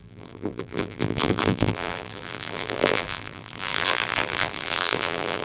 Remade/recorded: remade